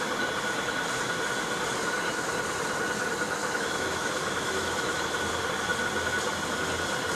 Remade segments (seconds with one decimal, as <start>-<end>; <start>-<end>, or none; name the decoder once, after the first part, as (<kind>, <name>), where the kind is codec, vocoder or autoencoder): 3.4-5.3 (autoencoder, DAC-VAE)